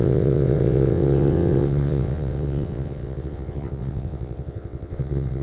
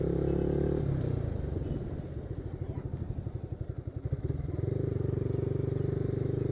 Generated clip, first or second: first